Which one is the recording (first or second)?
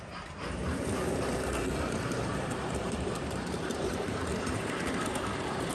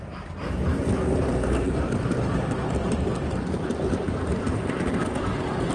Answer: second